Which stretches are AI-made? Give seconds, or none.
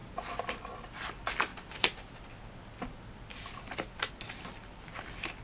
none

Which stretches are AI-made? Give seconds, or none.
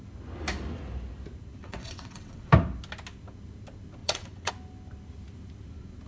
1.6-2.5 (vocoder, WaveNeXt); 4.0-4.5